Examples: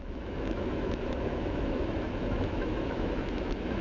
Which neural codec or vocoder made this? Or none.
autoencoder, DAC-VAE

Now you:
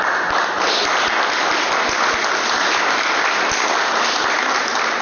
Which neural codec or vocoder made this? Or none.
none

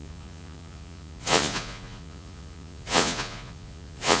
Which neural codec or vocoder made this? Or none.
vocoder, Vocos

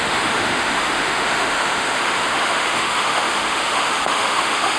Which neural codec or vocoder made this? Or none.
autoencoder, DAC-VAE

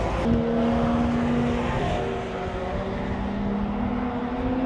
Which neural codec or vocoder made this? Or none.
none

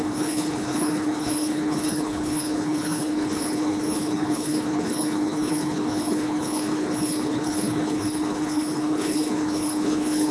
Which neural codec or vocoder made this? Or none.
codec, HILCodec